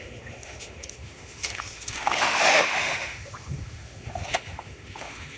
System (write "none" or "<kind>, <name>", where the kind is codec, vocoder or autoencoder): autoencoder, DAC-VAE